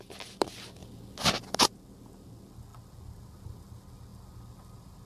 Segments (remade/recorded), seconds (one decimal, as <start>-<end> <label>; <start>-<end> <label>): 0.0-5.1 recorded

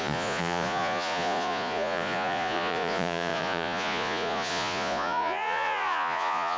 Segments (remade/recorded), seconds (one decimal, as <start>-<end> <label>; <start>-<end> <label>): 0.0-6.6 remade

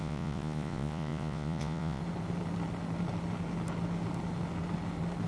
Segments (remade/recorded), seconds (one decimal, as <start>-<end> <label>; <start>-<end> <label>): 0.0-2.0 remade; 2.0-5.3 recorded

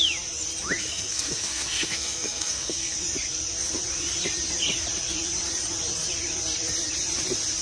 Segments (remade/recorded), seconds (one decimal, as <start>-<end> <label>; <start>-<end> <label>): 0.0-0.9 recorded; 0.9-2.9 remade; 2.9-7.6 recorded

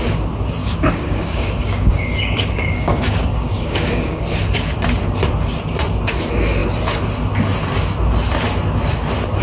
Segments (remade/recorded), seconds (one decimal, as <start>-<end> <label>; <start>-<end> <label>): 0.0-0.6 recorded; 0.6-4.2 remade; 4.2-9.4 recorded

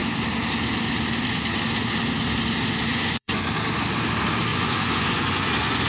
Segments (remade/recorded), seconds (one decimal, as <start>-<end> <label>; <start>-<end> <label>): 0.0-2.9 recorded; 2.9-3.5 remade; 3.5-4.5 recorded; 4.5-5.5 remade; 5.5-5.9 recorded